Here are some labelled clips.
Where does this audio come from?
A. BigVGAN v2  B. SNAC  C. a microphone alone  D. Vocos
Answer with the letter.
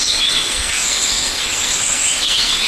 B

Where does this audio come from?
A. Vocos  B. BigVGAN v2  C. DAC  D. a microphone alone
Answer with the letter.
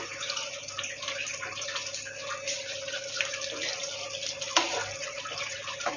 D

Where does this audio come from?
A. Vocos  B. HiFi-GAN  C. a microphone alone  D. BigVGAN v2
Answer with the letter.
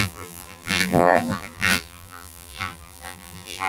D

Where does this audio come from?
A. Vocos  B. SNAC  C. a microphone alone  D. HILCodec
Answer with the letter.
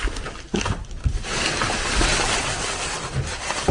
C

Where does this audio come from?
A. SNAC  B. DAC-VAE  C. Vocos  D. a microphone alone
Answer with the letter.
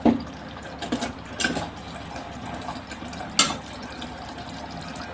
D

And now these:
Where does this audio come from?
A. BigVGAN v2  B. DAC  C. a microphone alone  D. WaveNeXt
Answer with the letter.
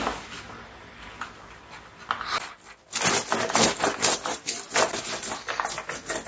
C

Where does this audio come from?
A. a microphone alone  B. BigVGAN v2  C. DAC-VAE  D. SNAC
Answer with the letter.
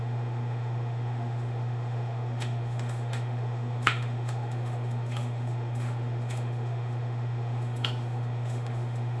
C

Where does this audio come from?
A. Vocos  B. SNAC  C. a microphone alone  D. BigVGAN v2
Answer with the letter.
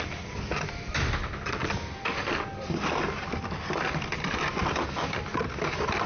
C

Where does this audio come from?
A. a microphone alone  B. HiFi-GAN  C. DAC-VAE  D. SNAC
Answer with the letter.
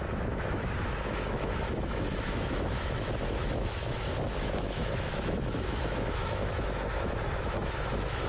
C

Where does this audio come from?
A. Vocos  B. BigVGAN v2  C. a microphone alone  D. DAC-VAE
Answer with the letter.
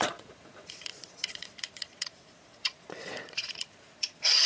A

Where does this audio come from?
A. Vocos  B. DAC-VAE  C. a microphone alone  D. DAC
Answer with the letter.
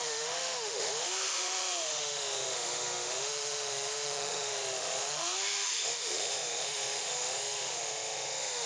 B